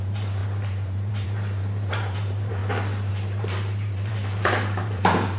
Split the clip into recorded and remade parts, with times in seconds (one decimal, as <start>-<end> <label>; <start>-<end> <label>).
0.0-2.6 remade; 2.6-3.1 recorded; 3.1-5.4 remade